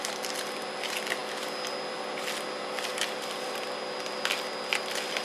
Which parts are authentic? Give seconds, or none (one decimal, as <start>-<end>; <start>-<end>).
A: 0.0-5.2